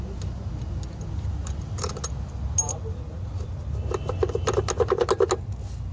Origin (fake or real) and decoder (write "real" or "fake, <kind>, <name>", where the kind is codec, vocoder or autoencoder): real